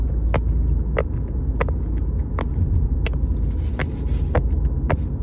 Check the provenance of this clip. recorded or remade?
recorded